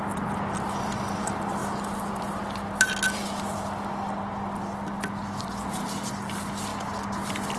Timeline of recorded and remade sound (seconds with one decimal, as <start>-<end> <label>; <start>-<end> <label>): 0.0-7.6 recorded